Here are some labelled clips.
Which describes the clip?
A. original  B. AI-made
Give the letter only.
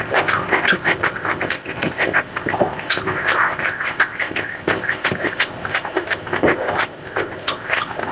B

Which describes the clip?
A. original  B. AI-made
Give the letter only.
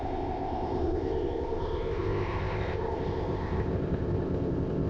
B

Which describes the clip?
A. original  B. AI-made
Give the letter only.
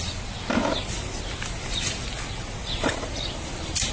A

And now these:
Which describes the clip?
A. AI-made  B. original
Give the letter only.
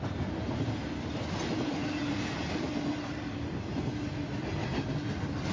B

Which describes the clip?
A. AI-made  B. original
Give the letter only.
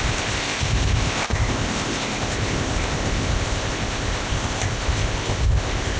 A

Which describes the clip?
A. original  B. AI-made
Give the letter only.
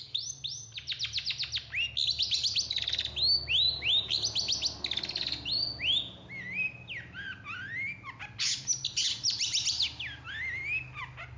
A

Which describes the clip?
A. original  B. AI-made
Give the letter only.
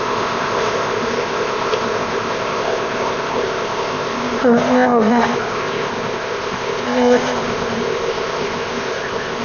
B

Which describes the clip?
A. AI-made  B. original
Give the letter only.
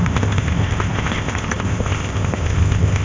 A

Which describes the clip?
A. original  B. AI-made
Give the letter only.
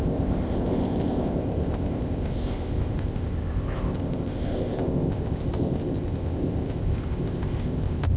B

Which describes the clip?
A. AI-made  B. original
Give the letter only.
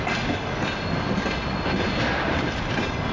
B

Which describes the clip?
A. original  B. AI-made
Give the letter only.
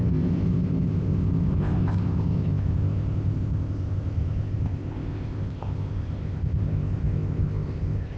B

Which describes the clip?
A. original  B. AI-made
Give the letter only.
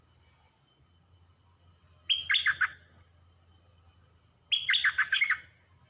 A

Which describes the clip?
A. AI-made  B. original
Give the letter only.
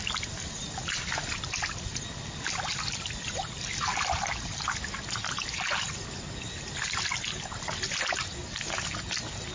B